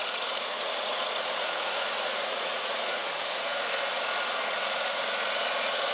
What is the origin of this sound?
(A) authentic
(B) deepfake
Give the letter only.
B